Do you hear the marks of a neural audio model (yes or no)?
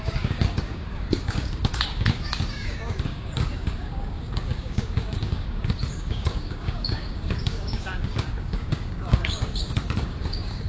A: yes